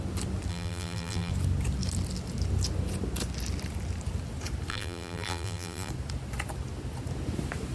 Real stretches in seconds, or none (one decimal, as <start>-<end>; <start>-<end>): 0.0-0.5; 1.3-4.7; 5.9-7.7